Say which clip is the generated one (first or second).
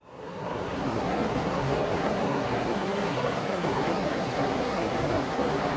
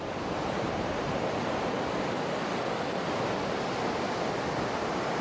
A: first